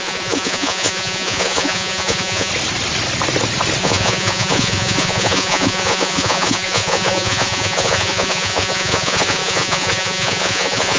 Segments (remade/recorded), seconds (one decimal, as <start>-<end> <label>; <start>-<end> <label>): 0.0-2.5 remade; 2.5-3.8 recorded; 3.8-11.0 remade